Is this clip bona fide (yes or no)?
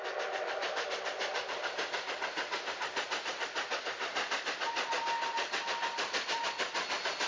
yes